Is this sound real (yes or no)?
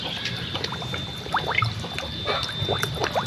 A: yes